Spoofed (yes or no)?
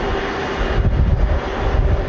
no